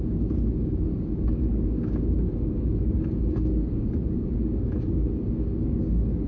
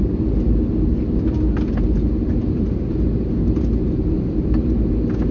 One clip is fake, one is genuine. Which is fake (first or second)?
first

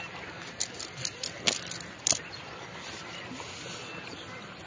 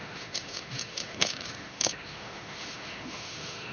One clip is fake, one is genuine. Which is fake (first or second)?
second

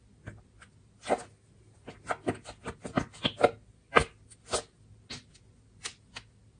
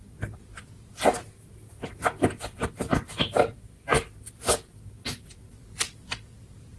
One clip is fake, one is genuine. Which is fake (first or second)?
second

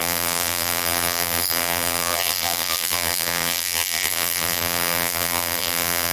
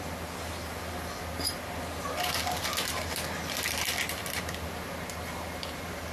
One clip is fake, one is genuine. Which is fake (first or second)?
first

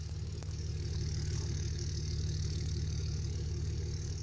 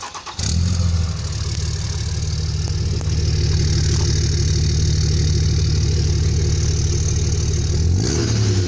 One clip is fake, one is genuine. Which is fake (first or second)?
first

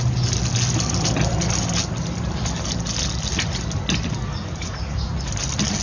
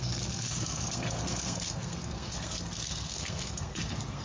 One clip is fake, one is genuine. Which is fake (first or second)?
second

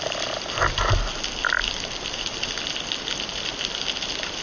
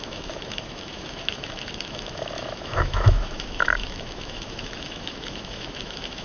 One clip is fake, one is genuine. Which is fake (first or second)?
second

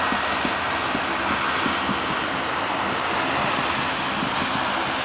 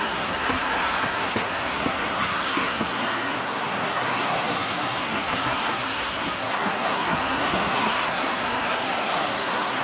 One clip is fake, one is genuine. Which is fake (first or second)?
second